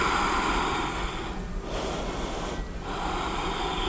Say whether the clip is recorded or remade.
recorded